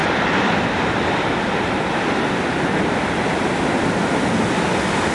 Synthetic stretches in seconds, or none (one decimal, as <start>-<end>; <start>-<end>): none